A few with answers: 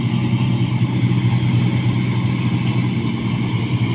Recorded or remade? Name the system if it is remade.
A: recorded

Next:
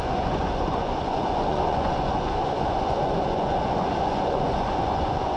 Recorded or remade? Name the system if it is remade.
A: remade, vocoder, Vocos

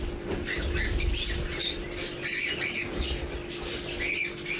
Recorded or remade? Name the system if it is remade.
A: recorded